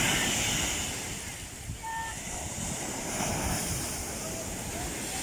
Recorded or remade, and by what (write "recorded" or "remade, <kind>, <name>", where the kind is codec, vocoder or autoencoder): recorded